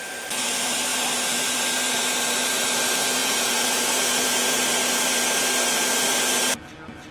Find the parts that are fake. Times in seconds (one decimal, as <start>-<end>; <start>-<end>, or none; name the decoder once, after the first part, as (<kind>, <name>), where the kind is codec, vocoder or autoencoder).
3.2-4.6 (vocoder, Vocos)